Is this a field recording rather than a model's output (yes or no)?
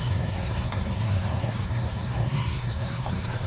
no